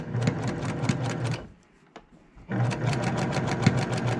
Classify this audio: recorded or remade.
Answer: recorded